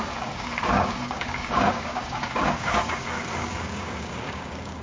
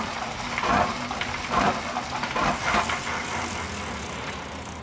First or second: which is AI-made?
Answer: first